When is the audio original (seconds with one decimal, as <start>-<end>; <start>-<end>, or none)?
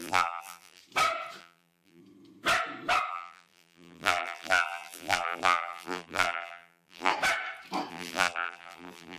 0.8-1.4; 2.0-3.1; 7.1-7.9